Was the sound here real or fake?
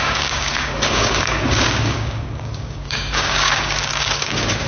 fake